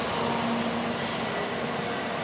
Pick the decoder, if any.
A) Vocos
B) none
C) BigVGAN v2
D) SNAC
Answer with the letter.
B